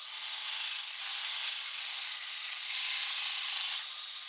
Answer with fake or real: fake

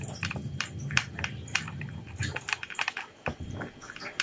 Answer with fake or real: fake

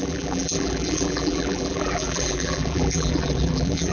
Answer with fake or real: fake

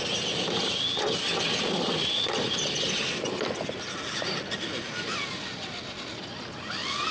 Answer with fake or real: real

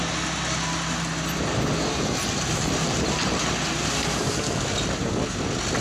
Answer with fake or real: real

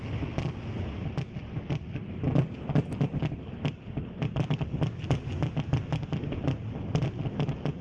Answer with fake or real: real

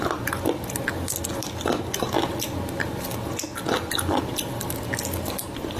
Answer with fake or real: real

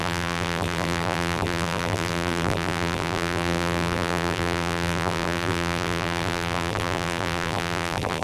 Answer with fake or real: fake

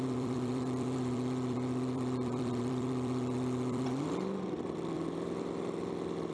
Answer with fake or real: fake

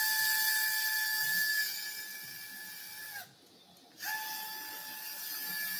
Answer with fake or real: real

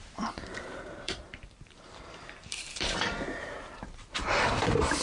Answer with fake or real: fake